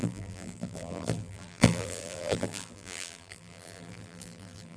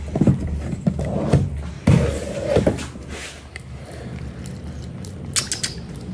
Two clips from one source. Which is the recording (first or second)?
second